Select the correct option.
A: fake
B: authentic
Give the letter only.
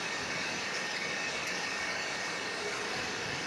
A